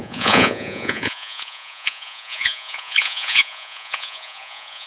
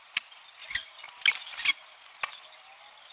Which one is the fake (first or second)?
first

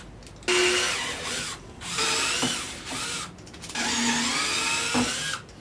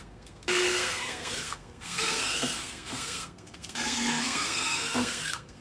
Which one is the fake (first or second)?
second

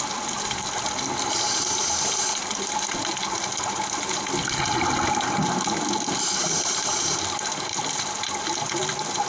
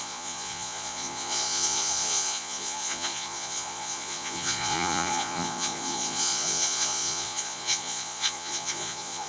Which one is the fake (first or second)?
second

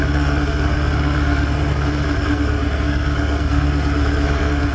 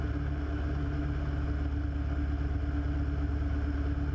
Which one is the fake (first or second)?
first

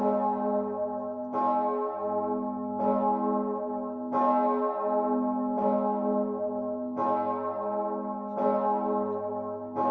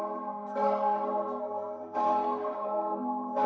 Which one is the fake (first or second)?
second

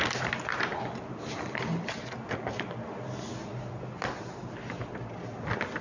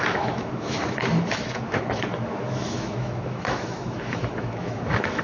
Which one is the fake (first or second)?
second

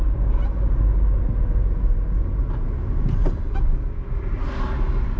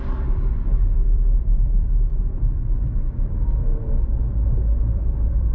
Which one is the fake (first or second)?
second